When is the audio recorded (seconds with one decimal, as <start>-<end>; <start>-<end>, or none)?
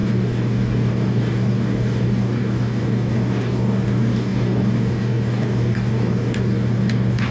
none